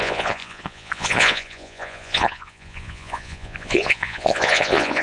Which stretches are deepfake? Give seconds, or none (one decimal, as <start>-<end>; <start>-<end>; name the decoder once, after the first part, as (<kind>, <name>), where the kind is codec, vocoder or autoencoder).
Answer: 0.0-5.0 (vocoder, Vocos)